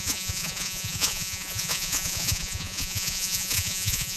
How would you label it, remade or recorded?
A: remade